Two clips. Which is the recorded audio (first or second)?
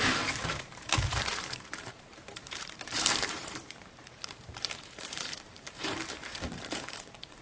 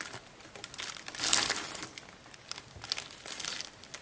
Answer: second